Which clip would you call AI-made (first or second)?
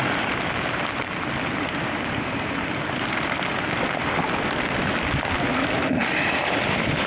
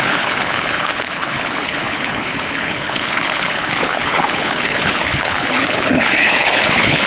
second